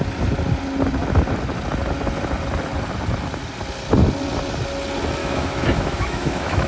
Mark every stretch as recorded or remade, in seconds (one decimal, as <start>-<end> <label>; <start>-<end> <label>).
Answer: 0.0-5.2 recorded; 5.2-6.7 remade